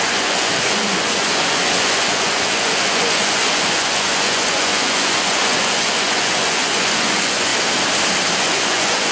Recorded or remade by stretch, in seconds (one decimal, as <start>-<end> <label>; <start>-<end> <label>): 0.0-7.5 remade; 7.5-8.4 recorded; 8.4-9.1 remade